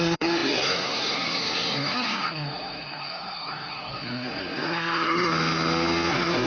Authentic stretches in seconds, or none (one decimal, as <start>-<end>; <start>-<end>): 5.3-6.1